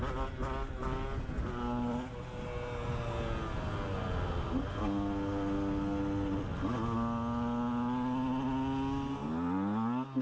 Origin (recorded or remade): recorded